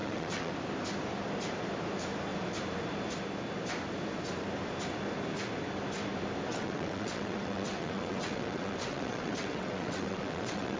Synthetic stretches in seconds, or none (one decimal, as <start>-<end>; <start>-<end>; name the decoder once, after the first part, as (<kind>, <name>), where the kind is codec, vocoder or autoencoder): 0.0-0.5 (vocoder, WaveNeXt); 6.5-10.8